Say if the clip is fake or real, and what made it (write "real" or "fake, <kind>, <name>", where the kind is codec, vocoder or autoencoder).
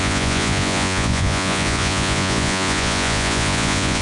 fake, vocoder, Vocos